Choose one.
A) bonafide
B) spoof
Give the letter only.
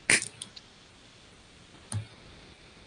A